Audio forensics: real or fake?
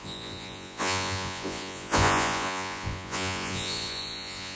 fake